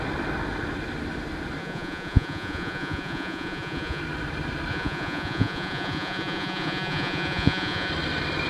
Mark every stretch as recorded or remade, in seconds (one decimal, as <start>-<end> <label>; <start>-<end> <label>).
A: 0.0-1.6 recorded; 1.6-4.0 remade; 4.0-4.7 recorded; 4.7-7.9 remade; 7.9-8.5 recorded